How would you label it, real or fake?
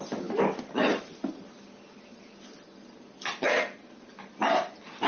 real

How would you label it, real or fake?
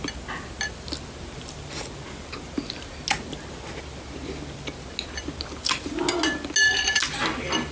real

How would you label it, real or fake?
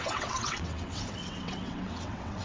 fake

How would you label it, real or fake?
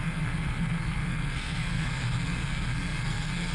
fake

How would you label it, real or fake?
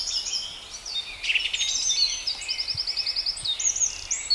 real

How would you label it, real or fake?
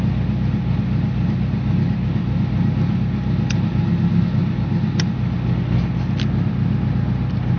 real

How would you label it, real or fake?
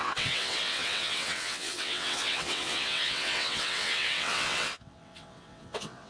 fake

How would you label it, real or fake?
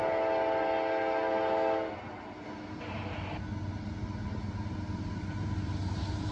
real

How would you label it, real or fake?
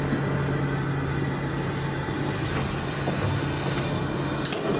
real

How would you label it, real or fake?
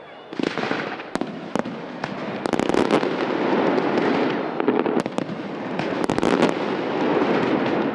real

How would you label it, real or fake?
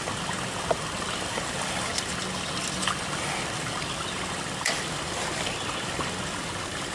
real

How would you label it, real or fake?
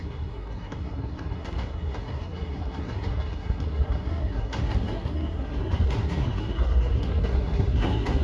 fake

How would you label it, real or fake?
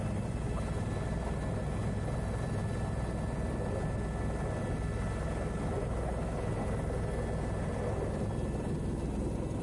real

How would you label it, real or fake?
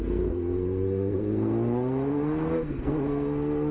fake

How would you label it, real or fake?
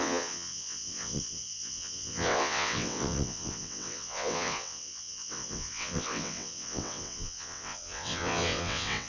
fake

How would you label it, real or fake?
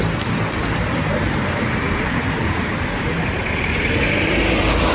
fake